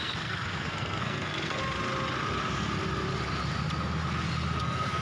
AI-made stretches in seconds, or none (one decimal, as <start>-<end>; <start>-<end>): 0.0-1.6; 4.6-5.0